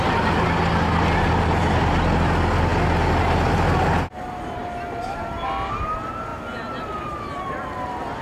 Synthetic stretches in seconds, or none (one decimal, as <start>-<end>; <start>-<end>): none